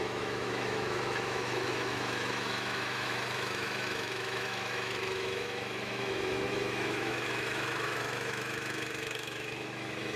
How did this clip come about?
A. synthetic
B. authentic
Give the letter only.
A